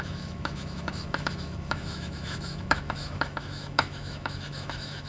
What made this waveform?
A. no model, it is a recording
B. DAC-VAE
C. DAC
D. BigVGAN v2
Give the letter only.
B